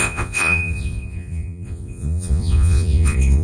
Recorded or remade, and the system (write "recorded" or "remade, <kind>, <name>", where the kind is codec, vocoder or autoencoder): remade, vocoder, Vocos